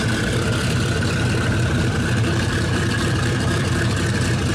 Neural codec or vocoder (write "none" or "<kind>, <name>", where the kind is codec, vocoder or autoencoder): vocoder, BigVGAN v2